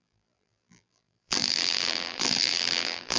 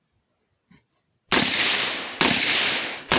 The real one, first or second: second